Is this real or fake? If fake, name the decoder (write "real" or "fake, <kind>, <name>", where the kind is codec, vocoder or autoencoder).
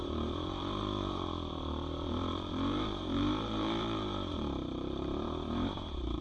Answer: fake, vocoder, BigVGAN v2